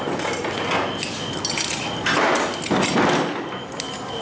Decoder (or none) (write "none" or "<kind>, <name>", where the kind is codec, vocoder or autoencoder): none